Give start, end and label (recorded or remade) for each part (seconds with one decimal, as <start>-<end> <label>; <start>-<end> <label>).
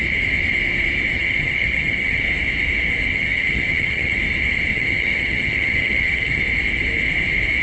0.0-1.1 recorded; 1.1-2.2 remade; 2.2-3.1 recorded; 3.1-4.2 remade; 4.2-4.7 recorded; 4.7-6.4 remade; 6.4-7.6 recorded